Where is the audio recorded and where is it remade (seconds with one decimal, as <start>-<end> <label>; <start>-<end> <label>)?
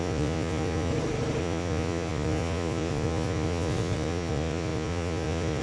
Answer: 0.0-0.9 remade; 0.9-1.4 recorded; 1.4-5.6 remade